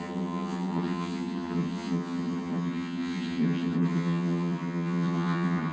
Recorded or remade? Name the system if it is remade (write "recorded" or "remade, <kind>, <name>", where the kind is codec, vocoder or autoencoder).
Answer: remade, vocoder, HiFi-GAN